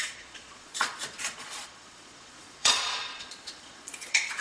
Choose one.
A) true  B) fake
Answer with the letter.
B